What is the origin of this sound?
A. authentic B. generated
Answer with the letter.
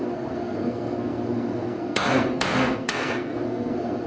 B